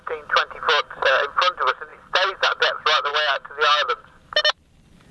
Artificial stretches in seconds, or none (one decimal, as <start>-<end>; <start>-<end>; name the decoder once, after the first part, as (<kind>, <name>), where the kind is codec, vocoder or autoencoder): 1.9-2.6 (vocoder, BigVGAN v2)